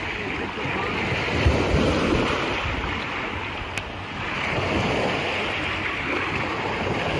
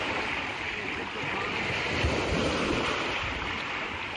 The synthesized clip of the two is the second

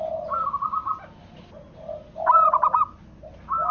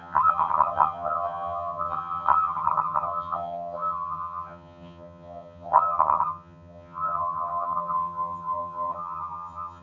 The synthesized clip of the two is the second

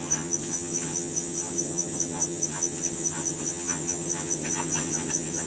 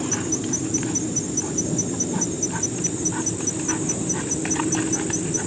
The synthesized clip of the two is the first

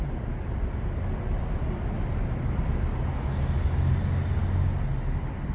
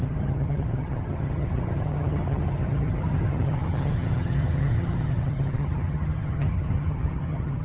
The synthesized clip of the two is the second